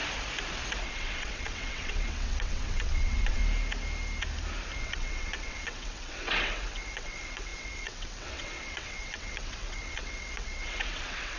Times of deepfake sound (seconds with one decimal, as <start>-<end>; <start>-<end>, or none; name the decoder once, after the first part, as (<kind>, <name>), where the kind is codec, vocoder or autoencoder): 0.8-3.4 (vocoder, WaveNeXt); 4.8-11.4